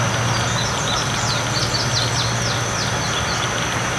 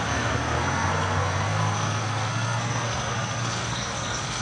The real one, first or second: first